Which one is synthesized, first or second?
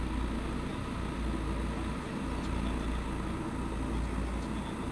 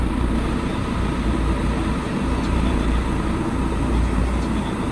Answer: second